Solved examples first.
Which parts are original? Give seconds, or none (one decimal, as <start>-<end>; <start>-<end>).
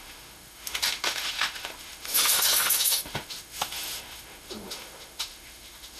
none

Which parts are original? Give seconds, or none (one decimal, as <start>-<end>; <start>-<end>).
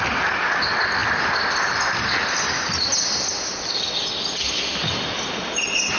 0.0-6.0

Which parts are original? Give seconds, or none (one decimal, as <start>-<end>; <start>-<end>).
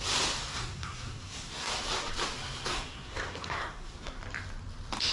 0.0-0.5; 1.7-2.7; 4.2-5.1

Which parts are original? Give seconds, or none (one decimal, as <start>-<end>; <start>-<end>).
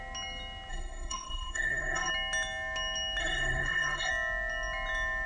0.0-0.7; 2.1-3.2; 4.1-5.3